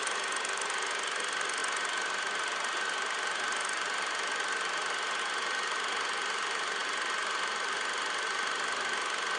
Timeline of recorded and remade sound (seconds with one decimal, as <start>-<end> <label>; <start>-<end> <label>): 0.0-9.4 recorded